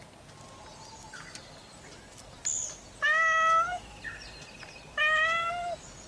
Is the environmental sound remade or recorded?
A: recorded